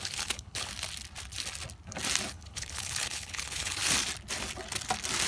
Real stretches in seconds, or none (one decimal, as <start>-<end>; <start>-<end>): 0.7-2.3; 3.8-5.3